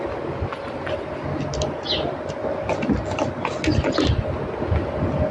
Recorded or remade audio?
recorded